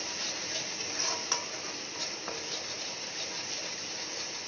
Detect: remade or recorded recorded